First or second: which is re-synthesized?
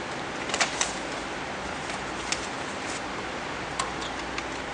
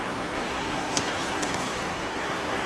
second